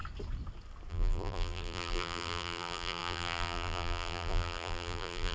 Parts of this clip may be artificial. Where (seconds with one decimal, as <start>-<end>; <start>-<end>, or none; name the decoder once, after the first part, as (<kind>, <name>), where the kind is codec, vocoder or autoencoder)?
0.9-5.3 (vocoder, BigVGAN v2)